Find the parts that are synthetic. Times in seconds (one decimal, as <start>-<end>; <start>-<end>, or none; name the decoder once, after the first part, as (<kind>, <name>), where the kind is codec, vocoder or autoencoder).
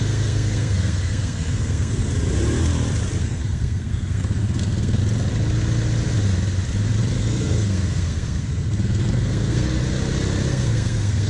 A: 0.0-2.1 (codec, SNAC); 3.2-5.0; 7.2-9.8; 10.5-11.3